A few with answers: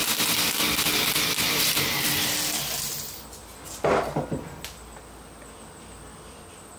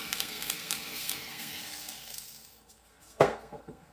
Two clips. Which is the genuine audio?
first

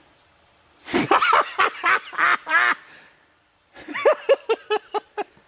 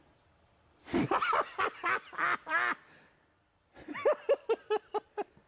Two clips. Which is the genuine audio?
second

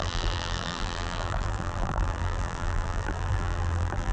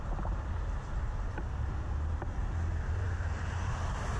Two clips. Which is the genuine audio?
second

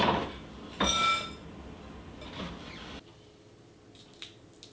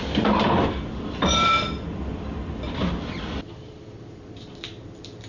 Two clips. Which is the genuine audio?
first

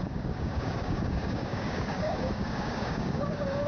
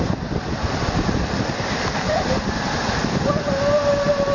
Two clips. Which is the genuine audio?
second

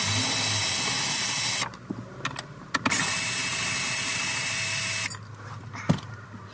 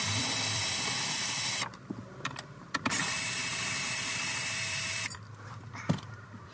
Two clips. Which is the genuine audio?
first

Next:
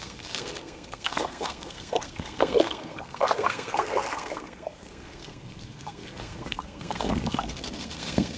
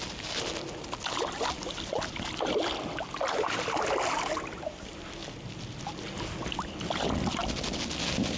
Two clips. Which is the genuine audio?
second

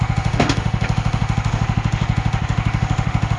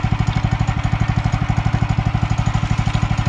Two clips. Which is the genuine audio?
second